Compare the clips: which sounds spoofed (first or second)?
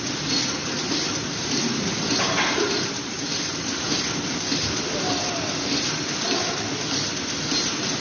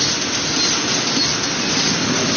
first